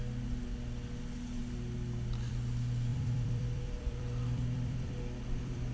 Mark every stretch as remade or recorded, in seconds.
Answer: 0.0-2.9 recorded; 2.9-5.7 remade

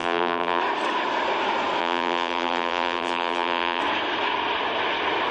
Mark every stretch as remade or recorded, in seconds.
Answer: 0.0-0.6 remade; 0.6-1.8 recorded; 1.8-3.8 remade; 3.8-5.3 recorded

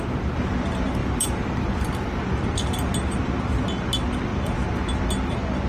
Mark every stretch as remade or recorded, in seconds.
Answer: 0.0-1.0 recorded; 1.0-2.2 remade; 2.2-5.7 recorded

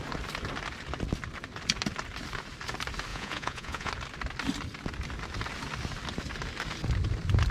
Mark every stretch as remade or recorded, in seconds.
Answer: 0.0-3.1 recorded; 3.1-3.9 remade; 3.9-7.5 recorded

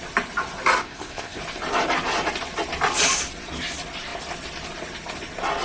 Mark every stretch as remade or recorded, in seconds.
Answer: 0.0-0.8 recorded; 0.8-1.4 remade; 1.4-5.6 recorded